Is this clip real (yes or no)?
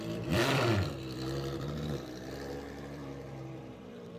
no